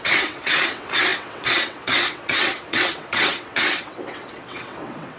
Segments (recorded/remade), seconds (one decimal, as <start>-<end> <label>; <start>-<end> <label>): 0.0-5.2 remade